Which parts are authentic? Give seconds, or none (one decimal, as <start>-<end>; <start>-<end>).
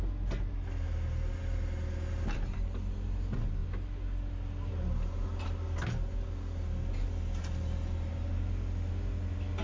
0.0-9.6